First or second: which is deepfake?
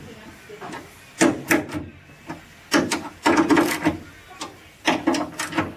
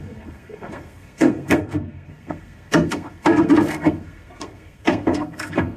second